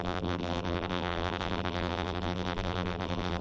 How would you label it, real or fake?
fake